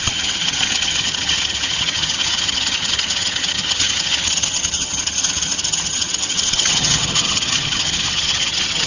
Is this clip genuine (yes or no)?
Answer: no